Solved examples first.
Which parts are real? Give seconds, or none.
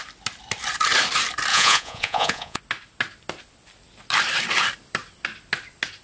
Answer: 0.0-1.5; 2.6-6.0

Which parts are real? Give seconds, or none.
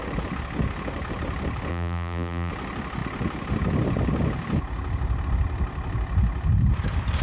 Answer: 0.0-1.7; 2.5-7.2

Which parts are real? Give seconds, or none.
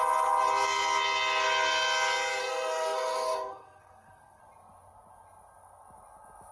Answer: 0.0-2.4; 4.4-6.5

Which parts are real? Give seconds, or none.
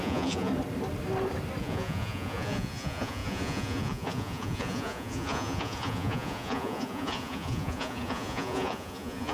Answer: 0.5-1.6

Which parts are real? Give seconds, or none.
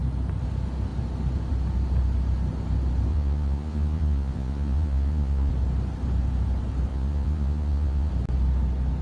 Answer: 0.0-3.1; 5.5-6.9; 8.1-9.0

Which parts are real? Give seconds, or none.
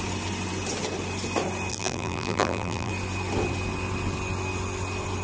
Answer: 0.0-1.7; 2.9-5.2